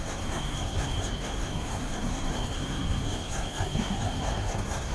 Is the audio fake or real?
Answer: fake